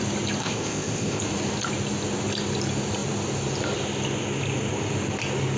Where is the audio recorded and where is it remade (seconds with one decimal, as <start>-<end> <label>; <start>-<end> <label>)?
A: 0.0-0.4 recorded; 0.4-1.2 remade; 1.2-5.6 recorded